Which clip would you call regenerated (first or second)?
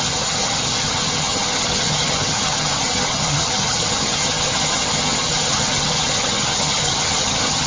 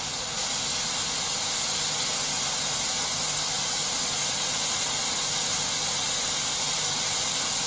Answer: first